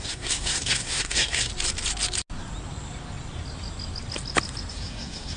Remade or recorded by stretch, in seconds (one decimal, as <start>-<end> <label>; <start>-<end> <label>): 0.0-1.5 remade; 1.5-4.7 recorded; 4.7-5.4 remade